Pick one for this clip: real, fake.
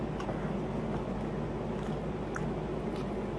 real